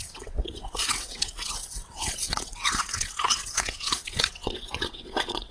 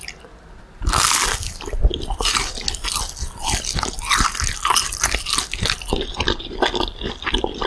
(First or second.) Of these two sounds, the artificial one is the first